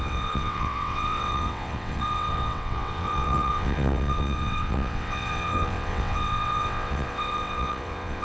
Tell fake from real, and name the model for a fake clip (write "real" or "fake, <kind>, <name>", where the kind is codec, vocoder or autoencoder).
fake, vocoder, WaveNeXt